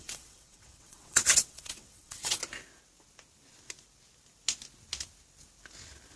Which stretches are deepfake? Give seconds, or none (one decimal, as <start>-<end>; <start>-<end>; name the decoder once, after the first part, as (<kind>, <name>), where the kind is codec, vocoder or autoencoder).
0.0-2.4 (vocoder, WaveNeXt)